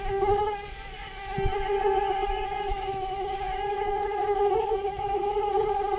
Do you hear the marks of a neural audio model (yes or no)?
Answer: yes